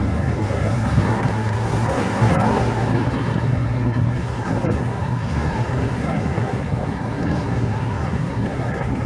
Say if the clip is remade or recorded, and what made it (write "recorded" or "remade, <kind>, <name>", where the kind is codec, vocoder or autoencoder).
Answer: remade, codec, SNAC